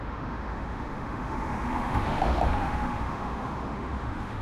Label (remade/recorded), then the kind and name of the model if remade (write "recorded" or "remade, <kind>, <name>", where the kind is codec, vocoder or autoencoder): remade, autoencoder, DAC-VAE